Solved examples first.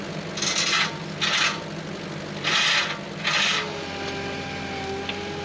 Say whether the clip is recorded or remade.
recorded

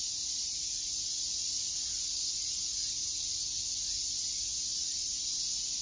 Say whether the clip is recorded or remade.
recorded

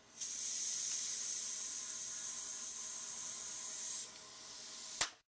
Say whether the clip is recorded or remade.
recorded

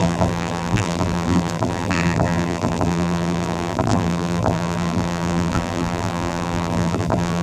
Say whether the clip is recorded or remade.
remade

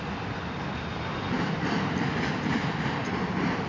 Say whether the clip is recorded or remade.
recorded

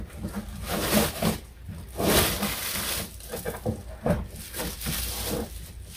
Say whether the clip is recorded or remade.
recorded